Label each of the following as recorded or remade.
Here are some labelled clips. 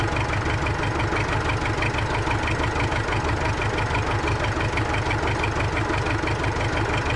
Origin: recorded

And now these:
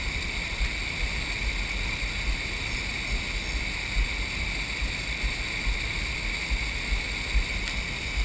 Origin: recorded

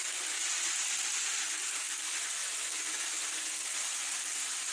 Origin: recorded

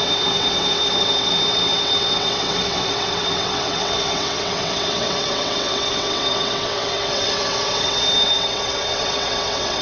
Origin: remade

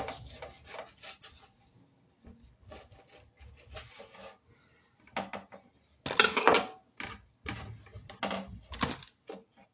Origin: recorded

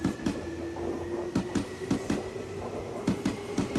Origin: recorded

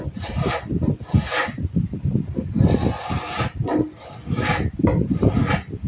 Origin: recorded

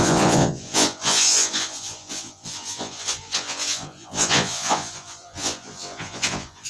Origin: remade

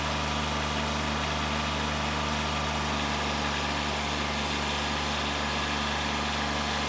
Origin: recorded